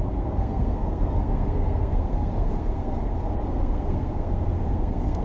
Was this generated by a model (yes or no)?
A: yes